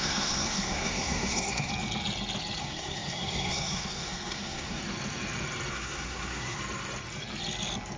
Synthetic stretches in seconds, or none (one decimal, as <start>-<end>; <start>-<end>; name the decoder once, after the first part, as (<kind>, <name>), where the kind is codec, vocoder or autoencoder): 0.0-1.7 (codec, SNAC); 2.6-4.8; 5.7-6.6